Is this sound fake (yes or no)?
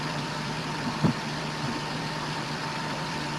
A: yes